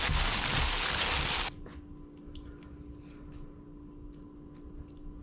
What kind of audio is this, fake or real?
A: real